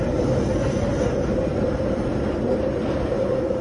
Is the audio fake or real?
real